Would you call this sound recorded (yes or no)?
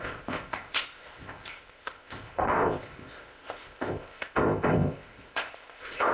no